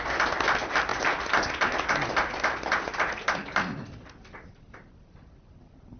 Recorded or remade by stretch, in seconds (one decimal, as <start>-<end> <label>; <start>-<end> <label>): 0.0-6.0 recorded